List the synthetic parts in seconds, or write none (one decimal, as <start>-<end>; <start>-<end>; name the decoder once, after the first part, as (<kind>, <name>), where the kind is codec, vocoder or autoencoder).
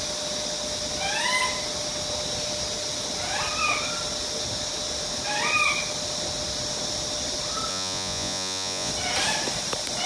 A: 7.7-8.9 (vocoder, Vocos)